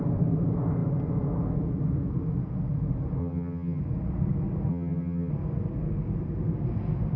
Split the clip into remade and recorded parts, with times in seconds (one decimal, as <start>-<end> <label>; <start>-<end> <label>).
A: 0.0-3.2 recorded; 3.2-3.8 remade; 3.8-4.7 recorded; 4.7-5.3 remade; 5.3-7.2 recorded